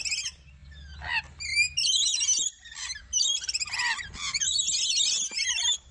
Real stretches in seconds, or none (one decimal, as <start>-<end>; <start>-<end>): 0.0-5.9